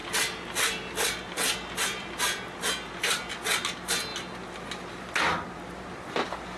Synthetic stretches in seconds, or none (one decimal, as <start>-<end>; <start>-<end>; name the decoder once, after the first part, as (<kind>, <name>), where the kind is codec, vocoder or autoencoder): 0.0-1.2 (vocoder, BigVGAN v2)